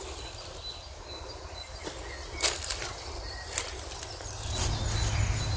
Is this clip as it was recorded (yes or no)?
yes